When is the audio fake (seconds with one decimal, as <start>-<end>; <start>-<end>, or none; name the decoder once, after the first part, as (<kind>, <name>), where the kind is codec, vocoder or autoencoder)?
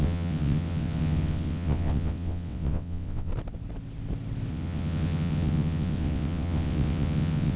0.0-3.3 (vocoder, WaveNeXt); 4.5-7.6